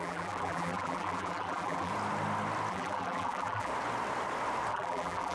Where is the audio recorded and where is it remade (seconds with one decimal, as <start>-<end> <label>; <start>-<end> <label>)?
0.0-1.9 remade; 1.9-2.7 recorded; 2.7-3.7 remade; 3.7-4.7 recorded; 4.7-5.3 remade